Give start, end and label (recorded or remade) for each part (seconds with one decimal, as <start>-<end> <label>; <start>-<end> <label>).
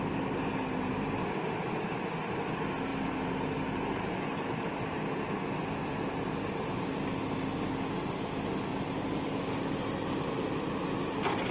0.0-11.5 recorded